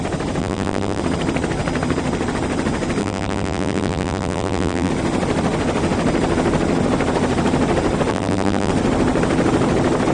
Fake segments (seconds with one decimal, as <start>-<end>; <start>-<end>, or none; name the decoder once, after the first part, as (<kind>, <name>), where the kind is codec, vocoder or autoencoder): 0.4-1.0 (vocoder, BigVGAN v2); 3.0-4.9; 8.1-8.7